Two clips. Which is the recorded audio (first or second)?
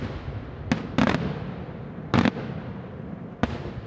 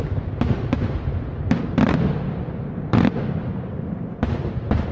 first